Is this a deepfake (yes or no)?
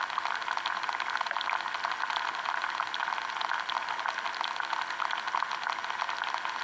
no